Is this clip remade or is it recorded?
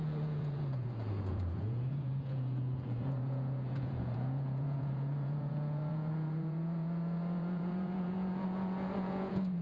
remade